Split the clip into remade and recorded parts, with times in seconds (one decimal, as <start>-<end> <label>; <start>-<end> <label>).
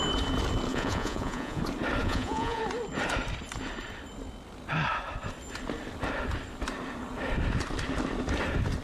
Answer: 0.0-0.7 recorded; 0.7-1.6 remade; 1.6-2.0 recorded; 2.0-2.6 remade; 2.6-8.8 recorded